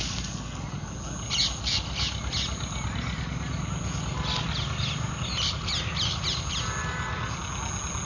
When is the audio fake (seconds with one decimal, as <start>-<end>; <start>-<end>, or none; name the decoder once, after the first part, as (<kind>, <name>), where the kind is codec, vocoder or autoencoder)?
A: none